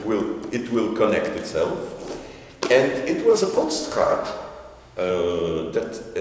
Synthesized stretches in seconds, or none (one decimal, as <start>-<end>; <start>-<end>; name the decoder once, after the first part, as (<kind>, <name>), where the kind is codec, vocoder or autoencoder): 3.3-5.1 (autoencoder, DAC-VAE)